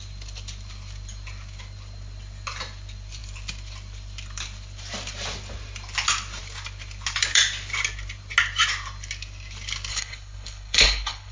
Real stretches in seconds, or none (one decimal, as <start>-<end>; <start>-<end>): 0.0-9.9